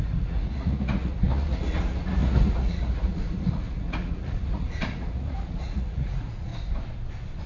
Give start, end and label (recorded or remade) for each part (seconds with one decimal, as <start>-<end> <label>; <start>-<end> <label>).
0.0-6.5 remade; 6.5-7.5 recorded